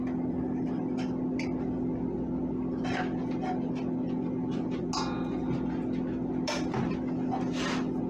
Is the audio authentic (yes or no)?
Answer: yes